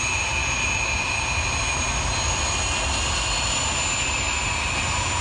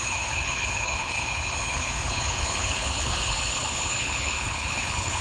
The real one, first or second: first